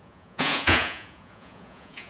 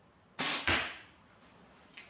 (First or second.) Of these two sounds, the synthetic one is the first